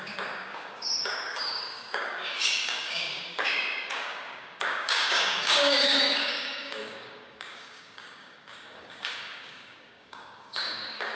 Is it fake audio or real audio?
fake